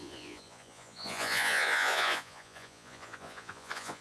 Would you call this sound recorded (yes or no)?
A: no